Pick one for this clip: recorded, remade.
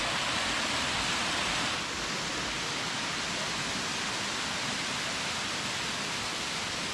recorded